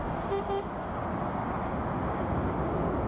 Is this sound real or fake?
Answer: real